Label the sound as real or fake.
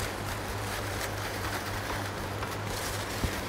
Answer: fake